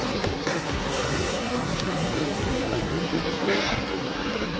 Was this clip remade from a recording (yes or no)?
yes